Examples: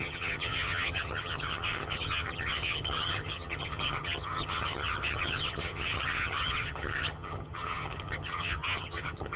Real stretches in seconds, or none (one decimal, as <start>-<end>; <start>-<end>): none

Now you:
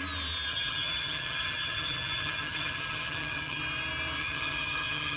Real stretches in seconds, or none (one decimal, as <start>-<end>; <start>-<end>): 0.0-0.5; 3.6-4.2

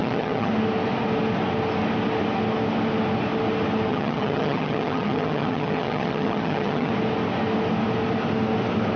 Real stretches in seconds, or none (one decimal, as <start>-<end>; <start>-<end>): 0.5-3.9; 6.9-9.0